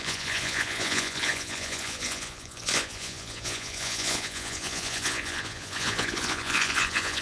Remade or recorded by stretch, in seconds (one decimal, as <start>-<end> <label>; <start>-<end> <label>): 0.0-7.2 remade